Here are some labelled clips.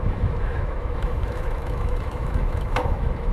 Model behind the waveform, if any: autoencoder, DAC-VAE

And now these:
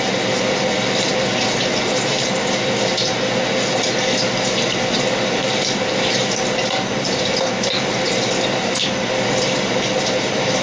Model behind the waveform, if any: none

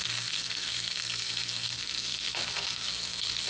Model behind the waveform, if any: codec, SNAC